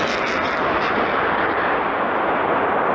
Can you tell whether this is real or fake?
real